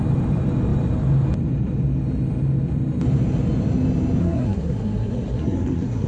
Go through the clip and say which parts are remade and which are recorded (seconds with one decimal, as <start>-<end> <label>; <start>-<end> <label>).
0.0-4.2 recorded; 4.2-6.1 remade